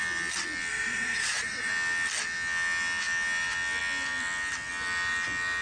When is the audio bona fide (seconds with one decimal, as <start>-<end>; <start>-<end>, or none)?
0.0-0.7; 1.7-5.6

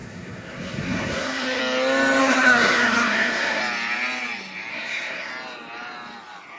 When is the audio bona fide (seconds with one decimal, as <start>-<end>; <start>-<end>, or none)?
1.6-2.2; 3.6-4.7; 5.3-6.6

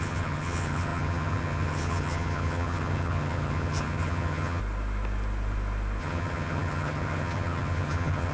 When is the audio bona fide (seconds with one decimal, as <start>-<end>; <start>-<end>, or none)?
4.6-6.0

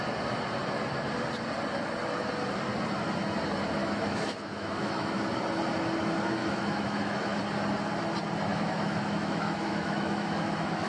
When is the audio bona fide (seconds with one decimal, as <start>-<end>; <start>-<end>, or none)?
0.0-3.8; 5.2-6.4; 7.4-8.5

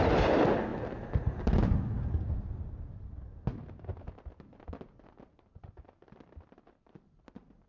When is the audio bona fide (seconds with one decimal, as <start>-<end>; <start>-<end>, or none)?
0.0-7.7

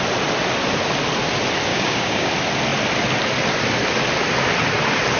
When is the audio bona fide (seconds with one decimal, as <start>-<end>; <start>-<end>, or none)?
0.0-1.7; 2.3-5.2